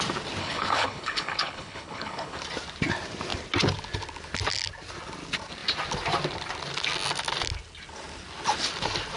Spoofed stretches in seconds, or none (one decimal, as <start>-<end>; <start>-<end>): 0.4-2.4

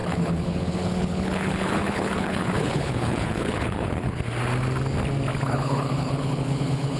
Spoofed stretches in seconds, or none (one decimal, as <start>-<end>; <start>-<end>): 0.0-4.2; 5.3-7.0

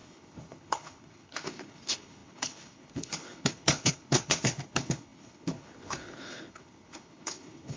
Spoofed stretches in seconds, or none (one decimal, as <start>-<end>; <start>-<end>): 0.0-7.8

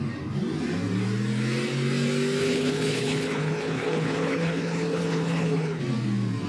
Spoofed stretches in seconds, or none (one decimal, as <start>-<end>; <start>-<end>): 2.4-5.8

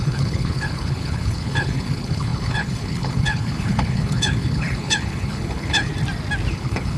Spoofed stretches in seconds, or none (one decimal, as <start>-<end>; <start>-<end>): 0.0-5.9; 6.5-7.0

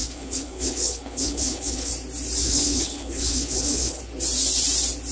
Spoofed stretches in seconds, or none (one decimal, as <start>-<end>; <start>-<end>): 0.0-1.9; 2.4-4.0

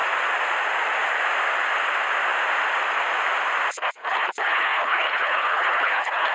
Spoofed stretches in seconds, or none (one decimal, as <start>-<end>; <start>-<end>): 3.7-6.3

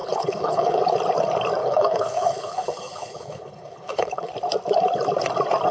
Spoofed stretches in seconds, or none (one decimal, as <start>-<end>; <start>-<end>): 0.0-0.8; 1.6-4.3